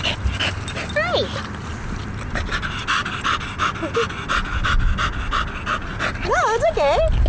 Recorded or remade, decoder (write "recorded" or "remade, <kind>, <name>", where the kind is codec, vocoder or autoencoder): recorded